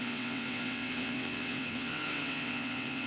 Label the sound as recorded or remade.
remade